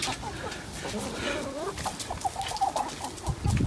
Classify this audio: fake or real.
real